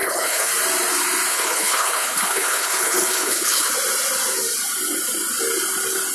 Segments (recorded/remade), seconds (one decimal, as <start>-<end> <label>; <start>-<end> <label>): 0.0-0.5 remade; 0.5-1.3 recorded; 1.3-3.7 remade; 3.7-6.1 recorded